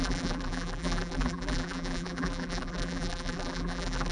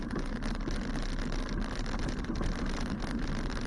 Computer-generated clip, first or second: first